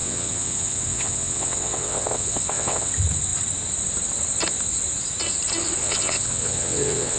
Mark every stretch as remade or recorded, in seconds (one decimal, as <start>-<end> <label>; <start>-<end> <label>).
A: 0.0-2.9 remade; 2.9-5.8 recorded; 5.8-7.2 remade